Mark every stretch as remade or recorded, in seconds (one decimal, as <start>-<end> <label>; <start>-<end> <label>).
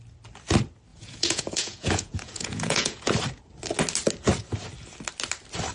0.0-0.9 recorded; 0.9-3.0 remade; 3.0-5.7 recorded